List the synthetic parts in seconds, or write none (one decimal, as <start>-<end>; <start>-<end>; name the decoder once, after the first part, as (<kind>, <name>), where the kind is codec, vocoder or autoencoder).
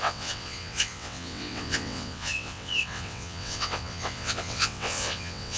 0.0-5.6 (vocoder, WaveNeXt)